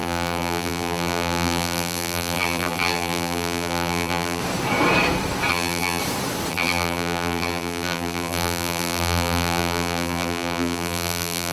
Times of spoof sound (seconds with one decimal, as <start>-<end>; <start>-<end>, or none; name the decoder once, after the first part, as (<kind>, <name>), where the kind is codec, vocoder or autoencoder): 0.0-4.4 (vocoder, BigVGAN v2); 5.5-6.0; 6.5-11.5